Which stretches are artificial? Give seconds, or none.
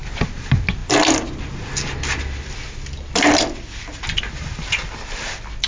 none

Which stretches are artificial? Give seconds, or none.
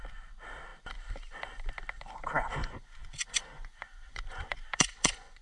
2.6-5.4 (vocoder, Vocos)